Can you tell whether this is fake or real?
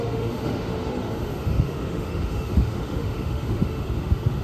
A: fake